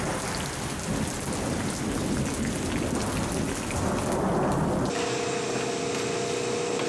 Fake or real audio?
real